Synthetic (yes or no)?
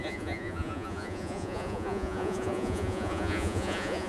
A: yes